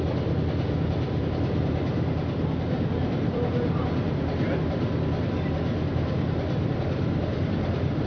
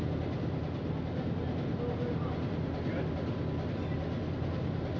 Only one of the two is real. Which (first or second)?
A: second